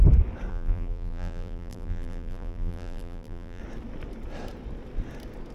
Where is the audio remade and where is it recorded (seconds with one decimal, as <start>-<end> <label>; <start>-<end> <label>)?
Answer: 0.0-0.5 recorded; 0.5-3.6 remade; 3.6-5.5 recorded